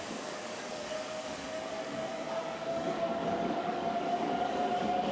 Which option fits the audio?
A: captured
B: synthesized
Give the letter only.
B